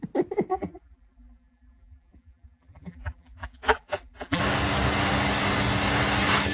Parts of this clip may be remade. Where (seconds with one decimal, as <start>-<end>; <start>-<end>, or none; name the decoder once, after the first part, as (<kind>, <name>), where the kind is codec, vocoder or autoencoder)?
0.5-4.4 (vocoder, BigVGAN v2)